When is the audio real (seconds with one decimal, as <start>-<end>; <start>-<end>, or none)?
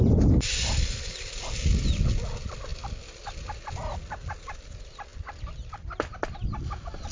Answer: 0.0-7.1